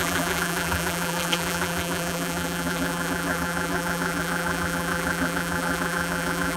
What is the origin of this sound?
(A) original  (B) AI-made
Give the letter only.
B